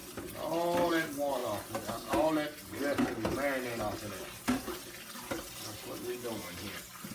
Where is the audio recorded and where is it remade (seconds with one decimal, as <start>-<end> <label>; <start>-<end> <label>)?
0.0-7.1 recorded